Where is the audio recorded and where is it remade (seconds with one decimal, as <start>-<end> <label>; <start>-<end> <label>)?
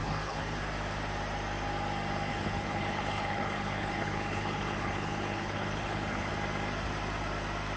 0.0-0.6 remade; 0.6-2.3 recorded; 2.3-6.3 remade; 6.3-7.8 recorded